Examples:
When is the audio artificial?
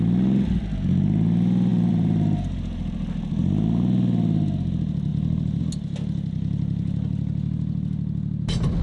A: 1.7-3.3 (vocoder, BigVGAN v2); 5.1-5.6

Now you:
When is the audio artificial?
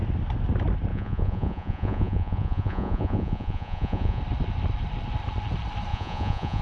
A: 0.9-4.2 (vocoder, Vocos); 5.9-6.6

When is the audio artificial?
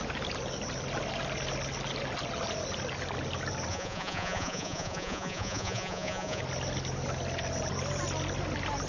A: 3.7-6.4 (vocoder, Vocos)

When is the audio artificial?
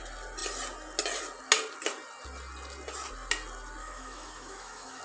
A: 3.8-5.0 (autoencoder, DAC-VAE)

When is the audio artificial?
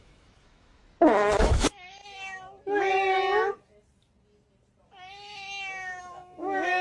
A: 0.0-0.8 (autoencoder, DAC-VAE); 1.4-2.0; 6.0-6.8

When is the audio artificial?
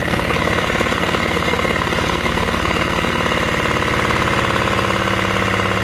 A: 0.0-3.2 (codec, SNAC)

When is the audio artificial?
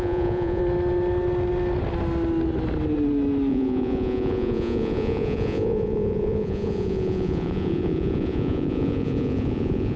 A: 0.0-0.6 (vocoder, Vocos); 3.5-10.0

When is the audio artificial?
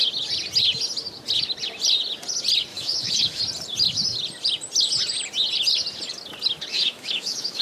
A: 2.7-3.4 (autoencoder, DAC-VAE); 6.7-7.6